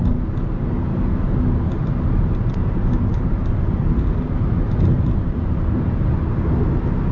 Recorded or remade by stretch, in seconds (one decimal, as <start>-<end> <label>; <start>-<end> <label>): 0.0-1.8 recorded; 1.8-6.1 remade; 6.1-7.1 recorded